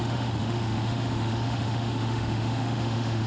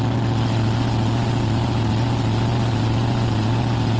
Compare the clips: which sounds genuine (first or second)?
second